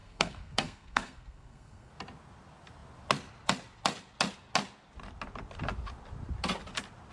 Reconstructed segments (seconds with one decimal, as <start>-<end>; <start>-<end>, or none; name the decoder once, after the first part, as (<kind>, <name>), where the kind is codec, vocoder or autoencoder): 0.0-1.9 (codec, SNAC)